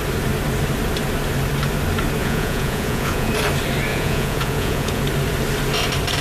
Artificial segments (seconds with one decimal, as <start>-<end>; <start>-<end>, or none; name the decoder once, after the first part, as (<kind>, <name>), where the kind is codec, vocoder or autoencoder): 2.2-3.3 (vocoder, Vocos); 3.9-5.0